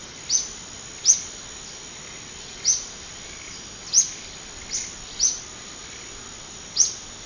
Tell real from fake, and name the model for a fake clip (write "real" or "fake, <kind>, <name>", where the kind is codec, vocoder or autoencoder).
real